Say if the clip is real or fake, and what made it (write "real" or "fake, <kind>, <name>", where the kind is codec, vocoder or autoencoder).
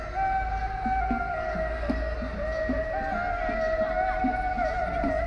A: real